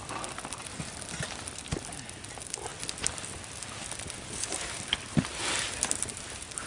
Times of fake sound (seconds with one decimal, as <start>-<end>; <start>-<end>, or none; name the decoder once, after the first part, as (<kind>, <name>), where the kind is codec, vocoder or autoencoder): 2.7-6.7 (vocoder, BigVGAN v2)

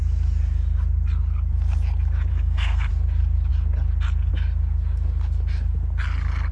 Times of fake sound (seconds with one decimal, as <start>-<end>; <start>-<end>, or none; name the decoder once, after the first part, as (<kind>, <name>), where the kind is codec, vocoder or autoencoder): 2.3-2.9 (codec, SNAC)

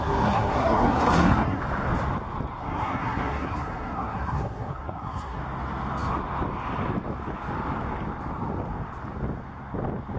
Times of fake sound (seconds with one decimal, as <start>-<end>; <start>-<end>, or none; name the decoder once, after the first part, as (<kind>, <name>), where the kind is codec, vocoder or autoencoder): 0.0-1.6 (codec, SNAC); 2.6-5.4

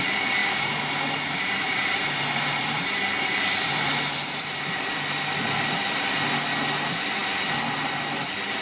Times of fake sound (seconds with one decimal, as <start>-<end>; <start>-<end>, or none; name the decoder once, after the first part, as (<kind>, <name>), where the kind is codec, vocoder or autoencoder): 0.4-4.6 (vocoder, BigVGAN v2)

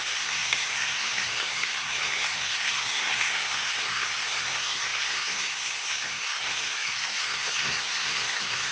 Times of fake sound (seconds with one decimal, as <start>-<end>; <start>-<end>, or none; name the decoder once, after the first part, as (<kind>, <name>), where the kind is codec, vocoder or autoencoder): 0.0-8.7 (codec, SNAC)

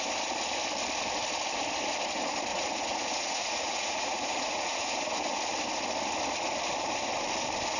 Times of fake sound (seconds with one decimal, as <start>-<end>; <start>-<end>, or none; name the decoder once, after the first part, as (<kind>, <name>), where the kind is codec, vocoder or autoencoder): 2.5-5.2 (vocoder, Vocos)

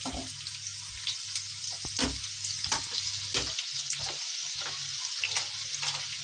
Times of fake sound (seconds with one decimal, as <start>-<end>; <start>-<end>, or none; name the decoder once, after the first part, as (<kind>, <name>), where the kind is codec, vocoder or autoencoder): none

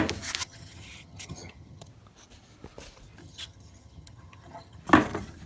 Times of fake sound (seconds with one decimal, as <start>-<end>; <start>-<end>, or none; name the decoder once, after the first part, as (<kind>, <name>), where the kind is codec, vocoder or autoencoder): 0.4-1.9 (vocoder, HiFi-GAN); 3.2-4.8